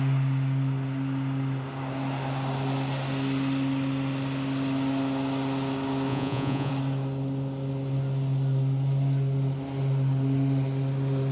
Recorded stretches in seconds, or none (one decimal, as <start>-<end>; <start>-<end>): 0.0-6.1; 6.7-11.3